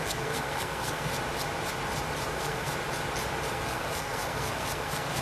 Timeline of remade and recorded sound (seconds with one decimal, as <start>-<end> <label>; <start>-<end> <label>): 0.0-1.1 remade; 1.1-2.3 recorded; 2.3-2.7 remade; 2.7-3.5 recorded; 3.5-5.2 remade